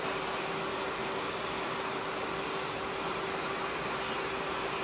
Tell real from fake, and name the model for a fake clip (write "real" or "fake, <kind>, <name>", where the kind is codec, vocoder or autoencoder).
real